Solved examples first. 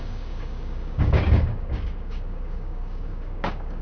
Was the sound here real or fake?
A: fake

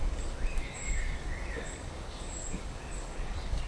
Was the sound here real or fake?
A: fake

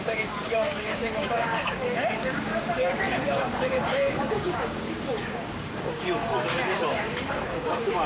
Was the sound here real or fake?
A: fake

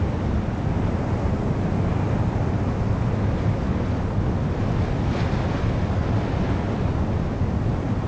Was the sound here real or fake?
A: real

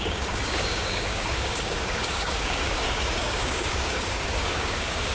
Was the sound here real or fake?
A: fake